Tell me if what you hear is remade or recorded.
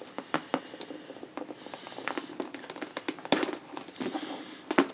recorded